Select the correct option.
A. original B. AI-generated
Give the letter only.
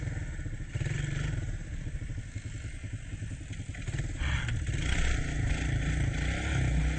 A